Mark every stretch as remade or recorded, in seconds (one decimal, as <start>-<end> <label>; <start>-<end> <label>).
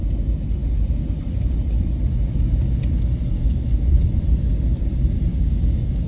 0.0-5.3 recorded; 5.3-6.1 remade